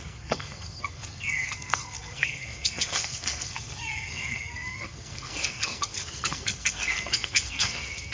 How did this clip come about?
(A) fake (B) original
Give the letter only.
A